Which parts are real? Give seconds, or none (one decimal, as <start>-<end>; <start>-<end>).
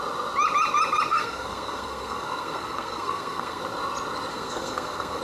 0.0-1.1; 3.6-4.3